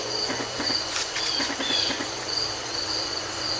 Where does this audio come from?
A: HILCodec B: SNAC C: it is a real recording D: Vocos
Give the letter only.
D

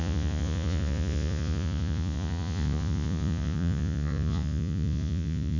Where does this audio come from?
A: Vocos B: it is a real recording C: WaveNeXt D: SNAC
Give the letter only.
A